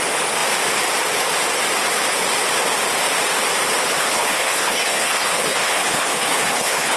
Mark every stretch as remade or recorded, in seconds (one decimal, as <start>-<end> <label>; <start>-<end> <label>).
0.0-4.0 recorded; 4.0-7.0 remade

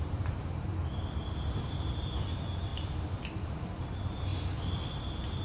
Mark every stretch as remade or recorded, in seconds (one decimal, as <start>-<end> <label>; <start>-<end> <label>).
0.0-0.7 remade; 0.7-1.5 recorded; 1.5-4.3 remade; 4.3-5.0 recorded; 5.0-5.4 remade

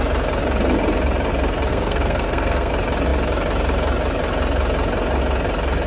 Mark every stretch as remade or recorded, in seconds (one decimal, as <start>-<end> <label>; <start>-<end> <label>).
0.0-1.7 recorded; 1.7-2.7 remade; 2.7-5.9 recorded

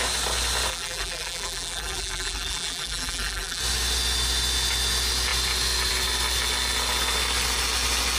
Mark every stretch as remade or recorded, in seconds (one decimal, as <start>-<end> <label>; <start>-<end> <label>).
0.0-0.7 recorded; 0.7-3.6 remade; 3.6-8.2 recorded